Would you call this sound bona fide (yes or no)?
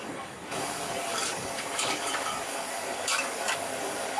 no